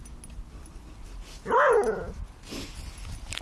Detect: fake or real real